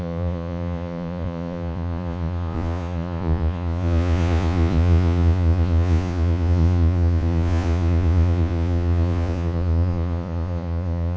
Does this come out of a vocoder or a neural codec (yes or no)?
yes